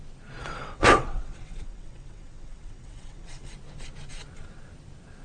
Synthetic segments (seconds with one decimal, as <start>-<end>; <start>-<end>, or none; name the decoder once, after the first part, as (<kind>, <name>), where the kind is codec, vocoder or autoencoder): 0.4-3.5 (vocoder, WaveNeXt)